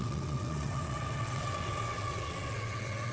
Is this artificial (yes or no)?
yes